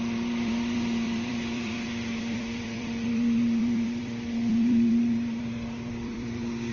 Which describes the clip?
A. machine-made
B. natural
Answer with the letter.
A